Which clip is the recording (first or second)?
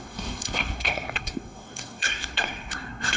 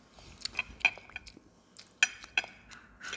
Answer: second